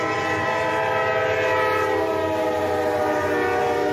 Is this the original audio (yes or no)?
yes